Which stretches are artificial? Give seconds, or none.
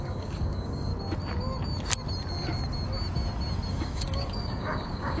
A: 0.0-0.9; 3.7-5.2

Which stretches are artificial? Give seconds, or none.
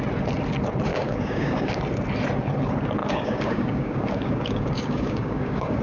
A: 0.9-1.8; 3.0-5.8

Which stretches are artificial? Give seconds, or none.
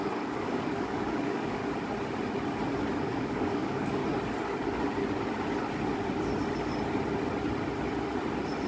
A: 0.0-1.6; 3.0-4.0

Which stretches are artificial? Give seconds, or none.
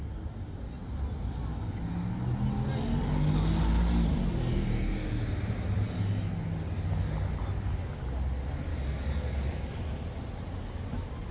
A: 8.7-9.8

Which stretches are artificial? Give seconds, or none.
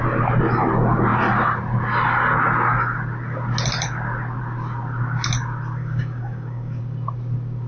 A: 5.8-6.8